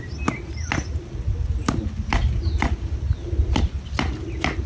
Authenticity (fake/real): real